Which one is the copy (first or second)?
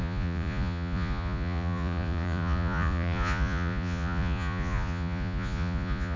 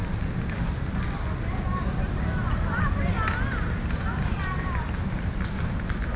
first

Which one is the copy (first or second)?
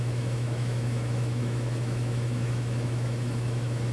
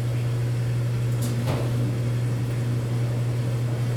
first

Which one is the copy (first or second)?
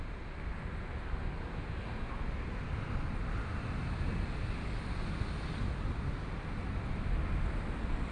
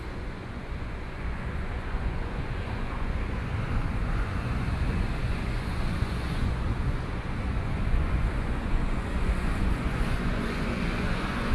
second